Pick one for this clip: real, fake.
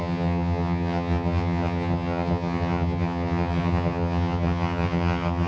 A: fake